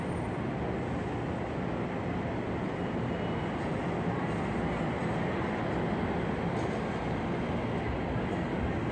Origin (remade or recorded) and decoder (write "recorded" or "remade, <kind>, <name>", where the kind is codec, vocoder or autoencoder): recorded